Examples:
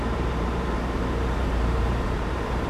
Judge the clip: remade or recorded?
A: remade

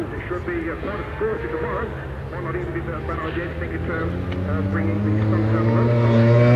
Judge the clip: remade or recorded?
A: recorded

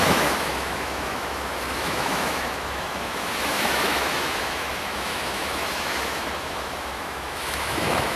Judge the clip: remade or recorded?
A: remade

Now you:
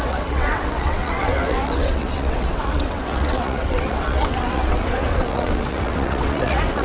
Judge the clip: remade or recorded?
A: remade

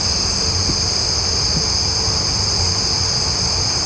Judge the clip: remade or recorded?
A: recorded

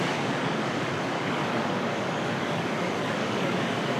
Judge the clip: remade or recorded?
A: remade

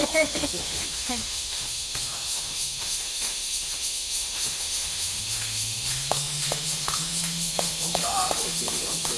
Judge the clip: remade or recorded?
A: remade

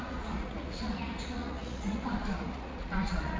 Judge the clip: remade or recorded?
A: remade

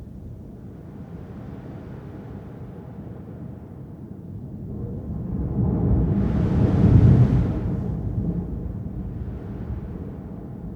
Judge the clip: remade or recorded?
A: recorded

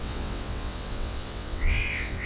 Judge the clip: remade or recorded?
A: remade